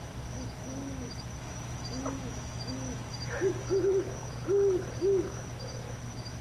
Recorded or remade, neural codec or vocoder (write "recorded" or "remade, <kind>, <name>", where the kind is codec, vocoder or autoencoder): remade, autoencoder, DAC-VAE